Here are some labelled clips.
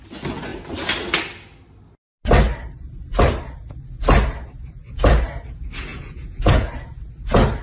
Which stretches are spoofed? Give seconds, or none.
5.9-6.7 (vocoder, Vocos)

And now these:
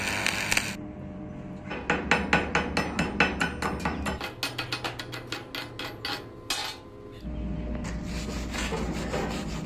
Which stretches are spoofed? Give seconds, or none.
none

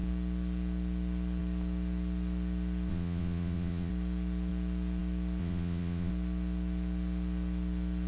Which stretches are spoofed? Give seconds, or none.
2.9-3.9 (vocoder, Vocos); 5.4-6.1

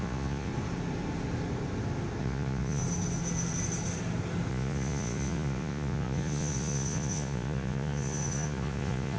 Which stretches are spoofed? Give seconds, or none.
0.0-0.5 (vocoder, Vocos); 2.2-2.8; 4.5-9.2

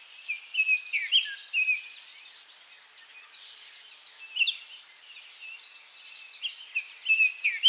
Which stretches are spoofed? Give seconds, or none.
none

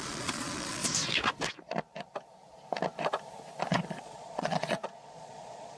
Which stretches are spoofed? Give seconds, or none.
0.0-0.8 (vocoder, Vocos); 3.7-5.8

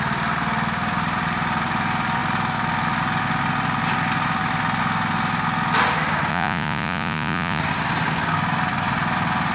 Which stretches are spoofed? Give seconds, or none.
6.3-7.6 (vocoder, Vocos)